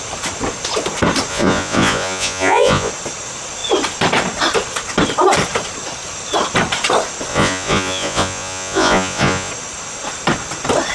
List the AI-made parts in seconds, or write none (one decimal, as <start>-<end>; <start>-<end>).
1.3-2.9; 7.3-9.5